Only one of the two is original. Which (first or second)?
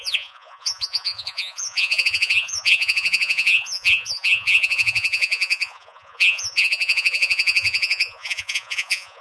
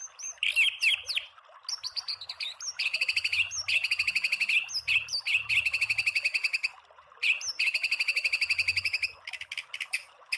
second